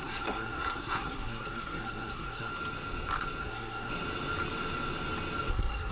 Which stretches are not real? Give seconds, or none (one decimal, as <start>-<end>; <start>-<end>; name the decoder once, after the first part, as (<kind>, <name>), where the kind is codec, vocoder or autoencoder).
0.0-2.5 (codec, SNAC); 3.4-3.9; 5.5-5.9